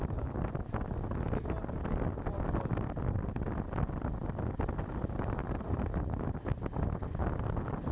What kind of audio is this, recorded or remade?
recorded